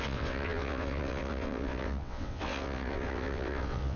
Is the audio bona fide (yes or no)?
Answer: no